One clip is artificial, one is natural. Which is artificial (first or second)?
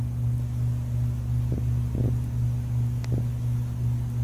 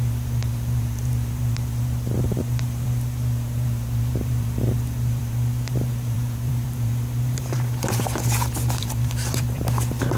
second